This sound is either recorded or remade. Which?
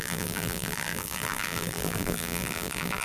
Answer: remade